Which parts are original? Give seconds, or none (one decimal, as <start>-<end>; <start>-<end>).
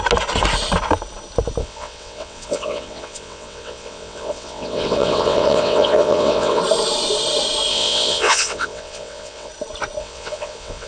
0.0-1.6; 6.6-7.7; 9.5-10.0